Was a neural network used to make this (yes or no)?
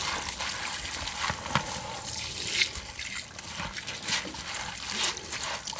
no